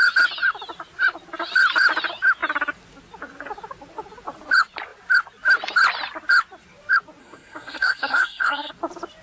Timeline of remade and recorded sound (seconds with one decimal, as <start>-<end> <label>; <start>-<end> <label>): 0.0-7.2 recorded; 7.2-8.7 remade; 8.7-9.2 recorded

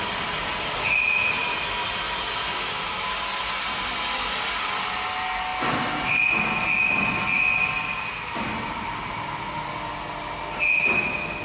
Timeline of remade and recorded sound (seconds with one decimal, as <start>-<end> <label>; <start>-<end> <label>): 0.0-11.4 recorded

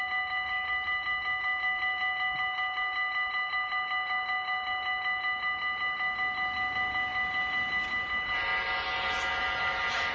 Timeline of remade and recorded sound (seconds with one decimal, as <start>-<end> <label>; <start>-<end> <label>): 0.0-10.1 recorded

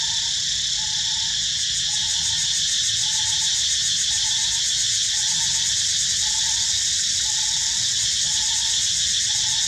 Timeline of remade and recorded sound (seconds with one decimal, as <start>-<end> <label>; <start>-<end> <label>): 0.0-2.0 recorded; 2.0-4.5 remade; 4.5-9.7 recorded

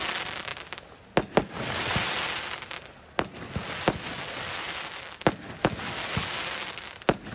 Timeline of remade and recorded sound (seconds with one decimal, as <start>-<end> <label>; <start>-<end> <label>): 0.0-7.3 recorded

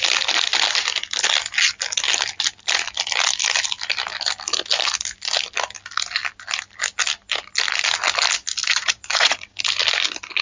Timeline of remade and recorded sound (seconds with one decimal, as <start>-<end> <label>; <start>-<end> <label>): 0.0-8.7 recorded; 8.7-9.5 remade; 9.5-10.4 recorded

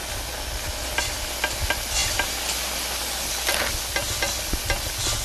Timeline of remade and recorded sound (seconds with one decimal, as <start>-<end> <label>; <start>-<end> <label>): 0.0-5.2 recorded

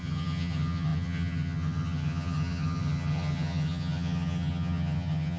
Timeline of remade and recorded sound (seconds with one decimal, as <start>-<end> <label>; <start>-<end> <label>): 0.0-5.4 remade